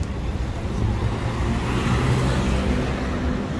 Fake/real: real